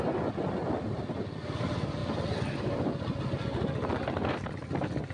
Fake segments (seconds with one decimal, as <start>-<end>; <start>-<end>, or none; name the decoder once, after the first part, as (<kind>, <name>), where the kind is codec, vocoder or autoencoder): none